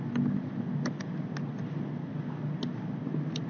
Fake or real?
real